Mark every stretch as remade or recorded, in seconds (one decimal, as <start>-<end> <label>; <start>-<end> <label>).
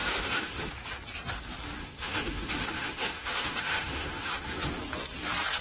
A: 0.0-0.7 remade; 0.7-1.8 recorded; 1.8-4.7 remade; 4.7-5.6 recorded